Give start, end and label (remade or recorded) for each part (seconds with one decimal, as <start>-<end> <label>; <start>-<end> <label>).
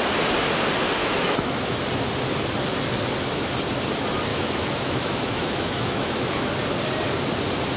0.0-1.0 recorded; 1.0-1.8 remade; 1.8-4.3 recorded; 4.3-6.5 remade; 6.5-7.8 recorded